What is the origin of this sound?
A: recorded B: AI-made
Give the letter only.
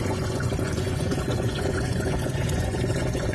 B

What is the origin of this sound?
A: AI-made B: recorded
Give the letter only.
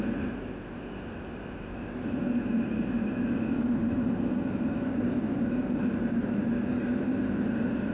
A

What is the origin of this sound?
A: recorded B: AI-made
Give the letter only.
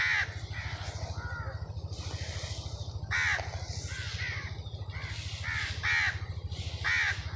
A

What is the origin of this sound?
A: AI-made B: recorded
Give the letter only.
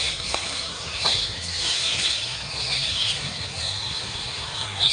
A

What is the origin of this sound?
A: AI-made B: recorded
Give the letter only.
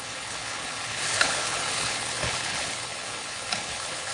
A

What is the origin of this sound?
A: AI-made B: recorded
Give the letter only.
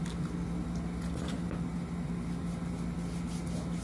B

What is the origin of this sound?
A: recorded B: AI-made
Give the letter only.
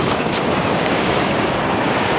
B